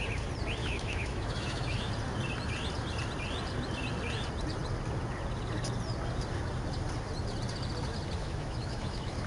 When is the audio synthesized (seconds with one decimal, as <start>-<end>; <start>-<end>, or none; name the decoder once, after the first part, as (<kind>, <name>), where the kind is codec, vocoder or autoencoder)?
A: 0.6-1.9 (autoencoder, DAC-VAE); 8.2-9.3